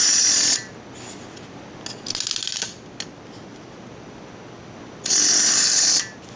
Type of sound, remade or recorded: recorded